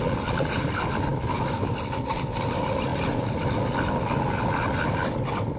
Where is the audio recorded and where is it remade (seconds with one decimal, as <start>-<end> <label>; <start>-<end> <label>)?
0.0-1.1 recorded; 1.1-1.7 remade; 1.7-5.6 recorded